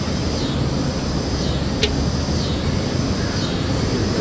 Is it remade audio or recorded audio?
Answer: recorded